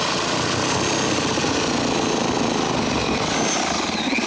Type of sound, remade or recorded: recorded